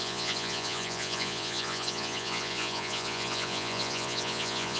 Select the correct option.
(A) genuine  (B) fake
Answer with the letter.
B